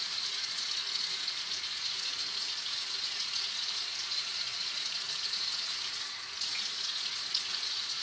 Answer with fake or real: fake